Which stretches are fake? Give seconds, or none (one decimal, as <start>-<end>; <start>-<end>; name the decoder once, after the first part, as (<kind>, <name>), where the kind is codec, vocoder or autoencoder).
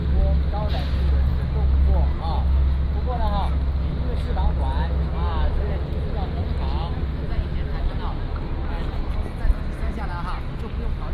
none